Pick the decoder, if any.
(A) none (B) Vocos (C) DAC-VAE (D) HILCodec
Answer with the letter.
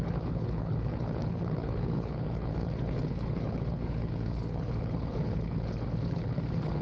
D